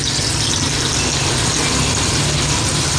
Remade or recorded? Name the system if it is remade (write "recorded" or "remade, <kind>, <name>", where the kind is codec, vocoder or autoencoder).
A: recorded